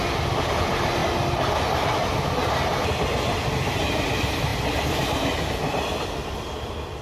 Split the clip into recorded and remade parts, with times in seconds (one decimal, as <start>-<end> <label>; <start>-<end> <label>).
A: 0.0-7.0 recorded

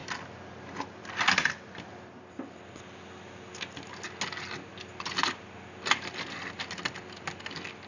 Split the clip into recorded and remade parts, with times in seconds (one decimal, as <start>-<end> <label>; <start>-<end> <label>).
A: 0.0-7.9 recorded

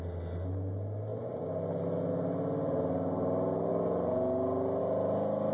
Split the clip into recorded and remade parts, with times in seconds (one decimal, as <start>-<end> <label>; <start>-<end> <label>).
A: 0.0-5.5 recorded

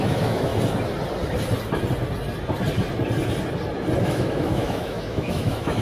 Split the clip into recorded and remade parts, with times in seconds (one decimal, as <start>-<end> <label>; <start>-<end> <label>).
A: 0.0-0.5 remade; 0.5-4.0 recorded; 4.0-5.8 remade

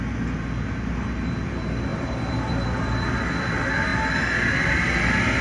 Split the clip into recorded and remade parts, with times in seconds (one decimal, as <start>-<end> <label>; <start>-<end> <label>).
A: 0.0-5.4 recorded